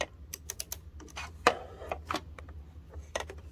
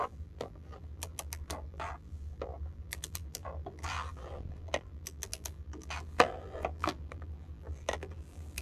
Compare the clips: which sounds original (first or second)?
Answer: first